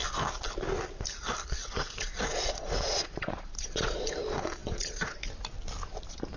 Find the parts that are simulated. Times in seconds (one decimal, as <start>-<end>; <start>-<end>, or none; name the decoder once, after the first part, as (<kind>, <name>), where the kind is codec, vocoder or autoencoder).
1.6-4.1 (vocoder, Vocos); 4.6-5.3